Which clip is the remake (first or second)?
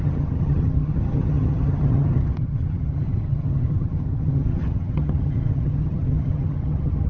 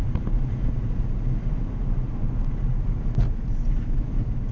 first